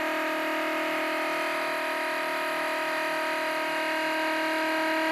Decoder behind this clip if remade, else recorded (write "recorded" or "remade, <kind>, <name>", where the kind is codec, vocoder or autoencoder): recorded